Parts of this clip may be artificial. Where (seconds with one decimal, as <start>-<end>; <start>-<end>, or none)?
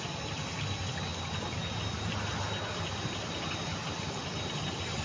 none